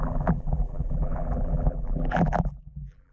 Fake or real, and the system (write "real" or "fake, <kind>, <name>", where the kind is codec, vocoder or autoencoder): fake, vocoder, BigVGAN v2